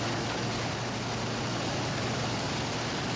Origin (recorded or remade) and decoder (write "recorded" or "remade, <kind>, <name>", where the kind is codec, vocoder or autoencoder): recorded